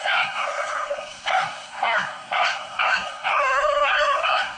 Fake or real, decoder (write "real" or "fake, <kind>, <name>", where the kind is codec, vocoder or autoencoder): fake, codec, SNAC